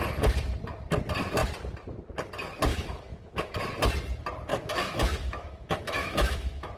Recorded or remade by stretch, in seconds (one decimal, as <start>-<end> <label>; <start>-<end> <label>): 0.0-2.7 recorded; 2.7-3.6 remade; 3.6-4.5 recorded; 4.5-6.8 remade